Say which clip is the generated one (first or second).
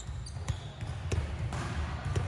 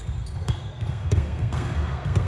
second